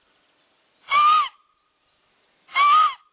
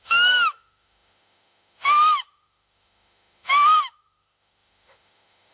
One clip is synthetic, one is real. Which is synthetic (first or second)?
second